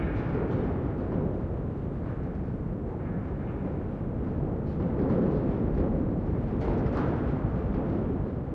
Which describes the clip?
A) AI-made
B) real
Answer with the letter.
B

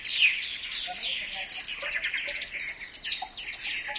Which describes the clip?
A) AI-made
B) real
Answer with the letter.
B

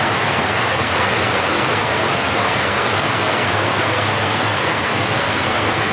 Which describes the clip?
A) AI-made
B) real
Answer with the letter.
A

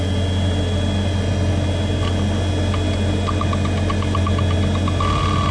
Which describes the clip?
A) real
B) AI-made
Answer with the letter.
A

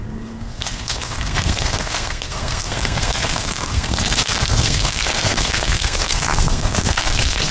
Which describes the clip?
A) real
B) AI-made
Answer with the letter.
B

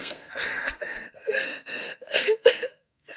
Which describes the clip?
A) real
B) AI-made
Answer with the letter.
B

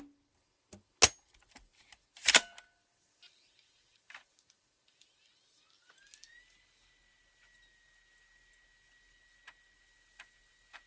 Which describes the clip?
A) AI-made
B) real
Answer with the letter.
B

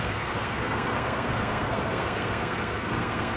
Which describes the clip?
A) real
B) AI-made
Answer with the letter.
B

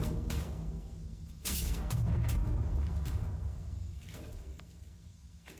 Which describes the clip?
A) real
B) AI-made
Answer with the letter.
B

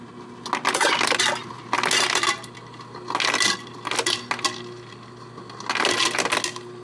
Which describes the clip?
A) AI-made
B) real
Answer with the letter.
B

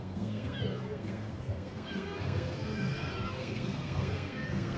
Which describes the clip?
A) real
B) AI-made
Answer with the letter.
B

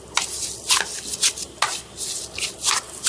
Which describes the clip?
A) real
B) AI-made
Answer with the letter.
A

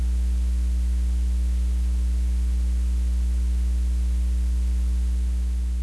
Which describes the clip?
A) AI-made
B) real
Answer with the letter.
B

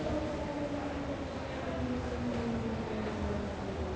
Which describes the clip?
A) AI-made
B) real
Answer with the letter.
B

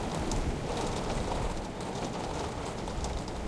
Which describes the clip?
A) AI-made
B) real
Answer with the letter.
B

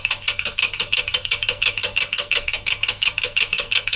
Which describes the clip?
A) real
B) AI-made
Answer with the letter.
B